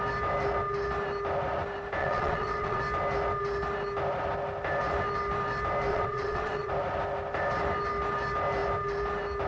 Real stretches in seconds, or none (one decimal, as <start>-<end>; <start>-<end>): 0.0-2.0; 2.8-5.9; 6.7-9.5